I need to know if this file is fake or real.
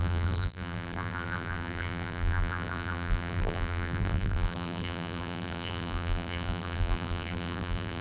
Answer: fake